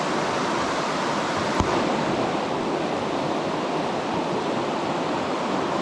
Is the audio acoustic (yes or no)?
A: yes